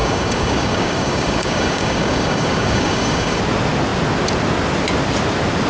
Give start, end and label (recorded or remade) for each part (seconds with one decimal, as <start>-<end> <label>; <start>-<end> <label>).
0.0-3.4 remade; 3.4-5.7 recorded

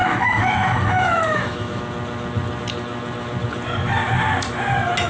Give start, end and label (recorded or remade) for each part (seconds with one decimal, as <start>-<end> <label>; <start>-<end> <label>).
0.0-1.8 remade; 1.8-5.1 recorded

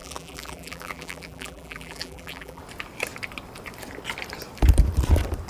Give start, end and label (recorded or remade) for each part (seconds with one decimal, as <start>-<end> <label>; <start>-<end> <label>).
0.0-2.6 remade; 2.6-5.5 recorded